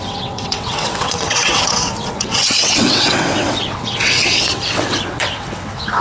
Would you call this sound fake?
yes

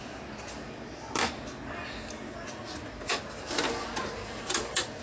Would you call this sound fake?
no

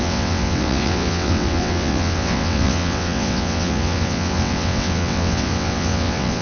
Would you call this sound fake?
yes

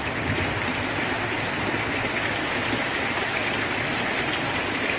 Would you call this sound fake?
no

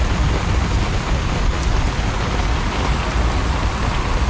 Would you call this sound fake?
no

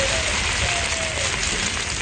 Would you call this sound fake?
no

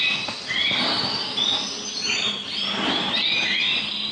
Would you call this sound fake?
no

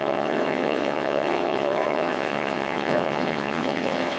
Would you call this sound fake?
yes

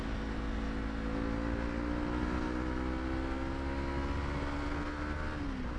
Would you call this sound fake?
no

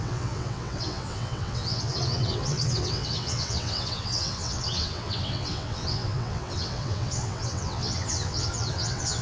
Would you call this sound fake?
yes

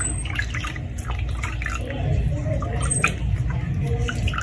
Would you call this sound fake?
no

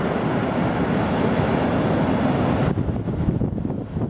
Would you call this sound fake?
no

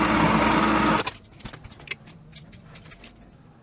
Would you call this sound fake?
no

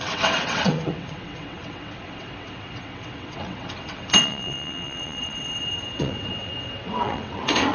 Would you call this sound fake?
yes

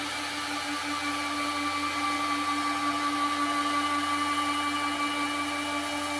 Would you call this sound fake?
no